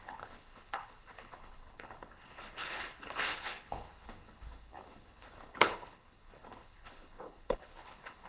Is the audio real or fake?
fake